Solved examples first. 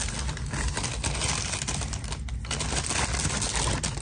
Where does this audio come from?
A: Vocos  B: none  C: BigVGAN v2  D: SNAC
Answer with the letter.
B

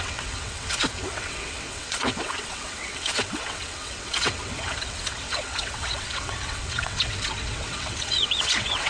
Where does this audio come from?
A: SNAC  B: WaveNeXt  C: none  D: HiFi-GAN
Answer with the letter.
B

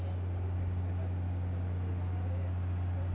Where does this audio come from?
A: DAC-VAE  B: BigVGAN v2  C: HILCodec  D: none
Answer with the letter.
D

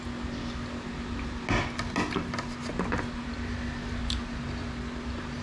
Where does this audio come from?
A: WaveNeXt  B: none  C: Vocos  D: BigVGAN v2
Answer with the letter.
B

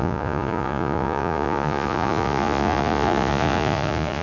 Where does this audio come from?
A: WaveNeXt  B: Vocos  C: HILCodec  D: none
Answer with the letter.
B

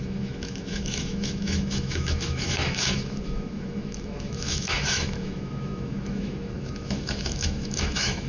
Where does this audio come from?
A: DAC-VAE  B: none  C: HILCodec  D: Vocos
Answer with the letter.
A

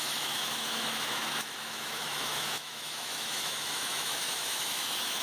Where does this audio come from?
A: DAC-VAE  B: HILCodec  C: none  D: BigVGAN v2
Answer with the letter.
A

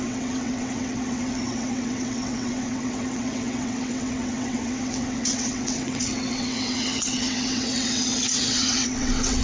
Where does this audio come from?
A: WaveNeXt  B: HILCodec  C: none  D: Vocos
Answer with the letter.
A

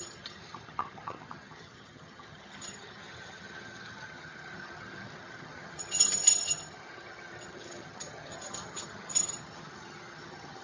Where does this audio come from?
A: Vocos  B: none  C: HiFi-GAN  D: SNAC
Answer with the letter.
C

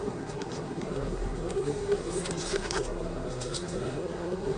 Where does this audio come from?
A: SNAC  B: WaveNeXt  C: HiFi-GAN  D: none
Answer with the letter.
A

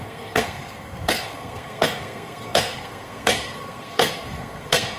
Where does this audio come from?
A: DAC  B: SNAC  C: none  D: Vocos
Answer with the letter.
B